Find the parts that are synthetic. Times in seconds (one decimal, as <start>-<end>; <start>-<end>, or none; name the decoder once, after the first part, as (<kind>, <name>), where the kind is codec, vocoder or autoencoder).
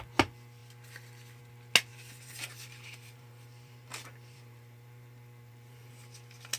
1.9-5.9 (vocoder, BigVGAN v2)